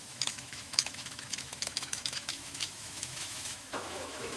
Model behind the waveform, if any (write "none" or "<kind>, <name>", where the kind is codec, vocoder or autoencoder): autoencoder, DAC-VAE